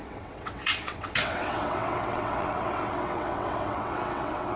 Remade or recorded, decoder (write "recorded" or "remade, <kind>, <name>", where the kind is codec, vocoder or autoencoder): remade, vocoder, WaveNeXt